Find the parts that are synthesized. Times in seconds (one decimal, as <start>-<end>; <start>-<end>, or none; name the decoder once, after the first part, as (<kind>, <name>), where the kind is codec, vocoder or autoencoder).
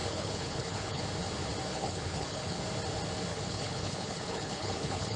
0.0-1.0 (codec, HILCodec); 1.7-2.6; 3.3-5.2